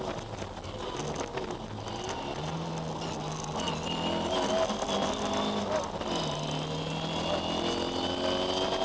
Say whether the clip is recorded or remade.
recorded